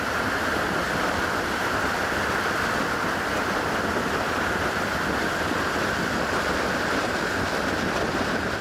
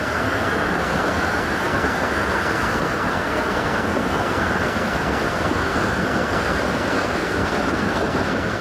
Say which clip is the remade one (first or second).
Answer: second